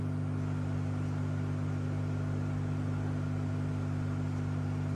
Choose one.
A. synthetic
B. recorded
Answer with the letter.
B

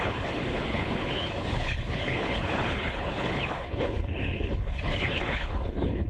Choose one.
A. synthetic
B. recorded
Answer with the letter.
A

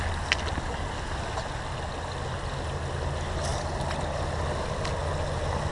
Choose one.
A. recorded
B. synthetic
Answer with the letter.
A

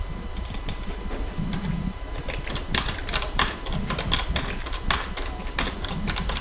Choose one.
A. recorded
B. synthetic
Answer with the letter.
B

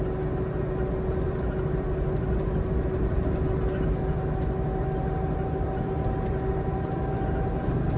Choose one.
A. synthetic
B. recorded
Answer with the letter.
B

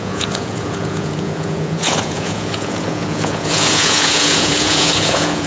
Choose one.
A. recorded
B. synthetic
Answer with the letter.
B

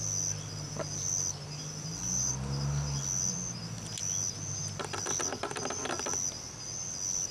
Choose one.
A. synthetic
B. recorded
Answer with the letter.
B